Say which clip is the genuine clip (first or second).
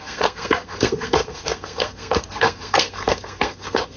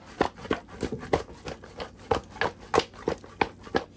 second